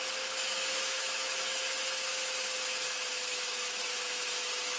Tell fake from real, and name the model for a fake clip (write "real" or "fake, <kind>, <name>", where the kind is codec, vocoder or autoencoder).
fake, autoencoder, DAC-VAE